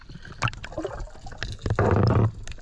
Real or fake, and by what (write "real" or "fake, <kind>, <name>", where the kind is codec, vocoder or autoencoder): real